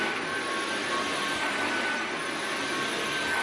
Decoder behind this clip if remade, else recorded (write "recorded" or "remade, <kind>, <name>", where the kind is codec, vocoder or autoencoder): recorded